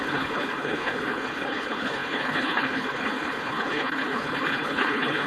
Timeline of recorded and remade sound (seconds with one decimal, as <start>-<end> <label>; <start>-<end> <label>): 0.0-5.3 remade